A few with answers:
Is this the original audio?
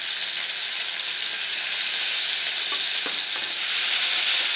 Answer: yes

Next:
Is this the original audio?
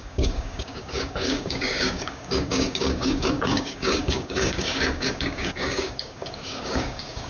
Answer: no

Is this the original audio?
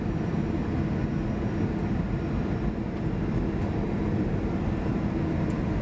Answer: yes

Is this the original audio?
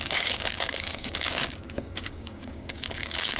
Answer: no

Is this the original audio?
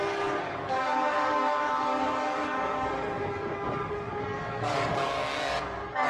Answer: no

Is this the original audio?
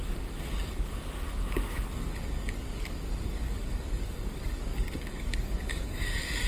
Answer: no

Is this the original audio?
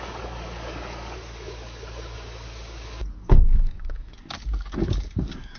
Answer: no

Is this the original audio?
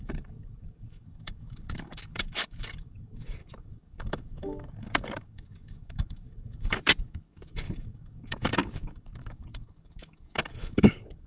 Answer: no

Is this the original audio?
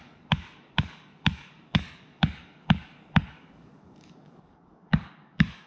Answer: no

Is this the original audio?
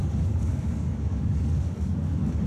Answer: no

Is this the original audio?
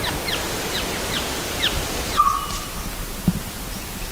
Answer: yes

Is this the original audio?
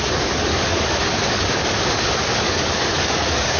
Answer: no